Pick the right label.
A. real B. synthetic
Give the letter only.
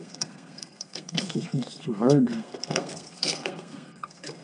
B